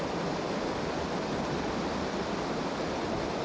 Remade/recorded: recorded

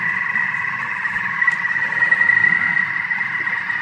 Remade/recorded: remade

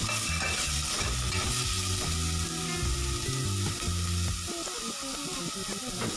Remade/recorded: recorded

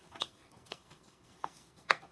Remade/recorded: remade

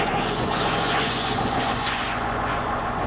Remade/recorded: remade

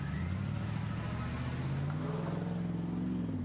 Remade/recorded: recorded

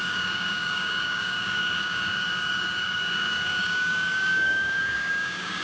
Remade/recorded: remade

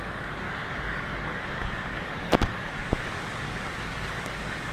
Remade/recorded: remade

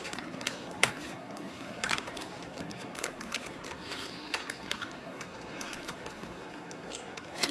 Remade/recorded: remade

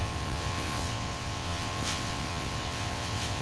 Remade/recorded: remade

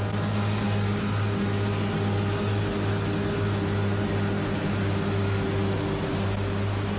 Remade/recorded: recorded